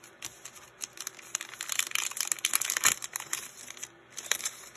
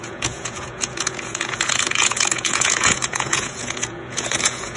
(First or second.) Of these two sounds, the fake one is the second